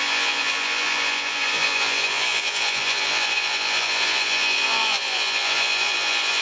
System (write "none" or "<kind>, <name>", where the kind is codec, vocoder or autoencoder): vocoder, Vocos